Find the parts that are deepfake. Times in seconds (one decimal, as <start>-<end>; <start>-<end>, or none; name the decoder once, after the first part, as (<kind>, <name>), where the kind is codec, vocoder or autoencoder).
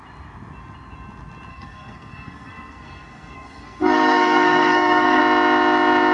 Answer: 1.5-5.2 (codec, SNAC)